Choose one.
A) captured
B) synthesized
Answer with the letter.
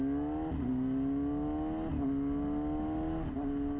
A